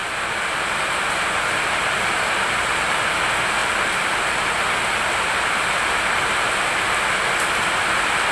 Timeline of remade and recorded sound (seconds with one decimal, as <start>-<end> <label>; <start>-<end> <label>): 0.0-1.1 remade; 1.1-3.6 recorded; 3.6-4.2 remade; 4.2-8.3 recorded